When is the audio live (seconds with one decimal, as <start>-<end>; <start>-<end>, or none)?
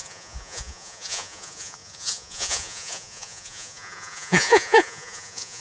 none